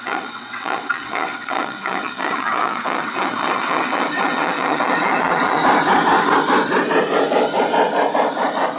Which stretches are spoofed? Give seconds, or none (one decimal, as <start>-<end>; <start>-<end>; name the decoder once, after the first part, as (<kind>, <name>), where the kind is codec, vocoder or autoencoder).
0.0-5.6 (vocoder, WaveNeXt)

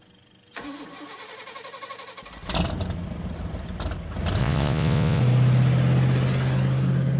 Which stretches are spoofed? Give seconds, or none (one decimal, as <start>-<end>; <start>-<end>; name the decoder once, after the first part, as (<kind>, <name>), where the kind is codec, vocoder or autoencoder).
4.4-5.2 (vocoder, Vocos)

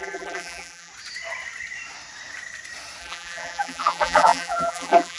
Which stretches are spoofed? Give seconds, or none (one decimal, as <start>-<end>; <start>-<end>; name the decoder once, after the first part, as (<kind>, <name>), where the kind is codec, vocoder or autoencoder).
0.0-0.9 (vocoder, BigVGAN v2); 3.0-5.2

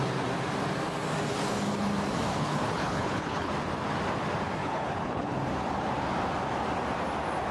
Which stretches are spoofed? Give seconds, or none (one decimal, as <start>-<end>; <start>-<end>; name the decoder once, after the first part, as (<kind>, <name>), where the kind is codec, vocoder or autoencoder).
2.3-3.5 (codec, HILCodec); 4.6-5.3

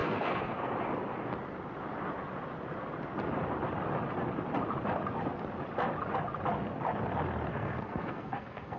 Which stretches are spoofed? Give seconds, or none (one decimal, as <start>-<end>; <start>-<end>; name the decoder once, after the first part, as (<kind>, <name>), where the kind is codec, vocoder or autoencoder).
0.0-0.7 (codec, SNAC); 7.5-8.8